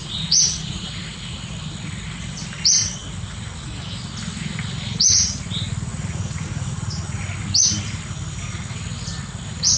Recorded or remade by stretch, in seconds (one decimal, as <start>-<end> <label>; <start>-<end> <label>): 0.0-0.9 remade; 0.9-5.9 recorded; 5.9-7.2 remade; 7.2-9.8 recorded